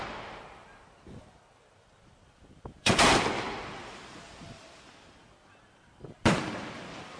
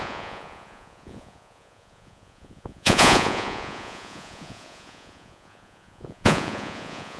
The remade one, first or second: second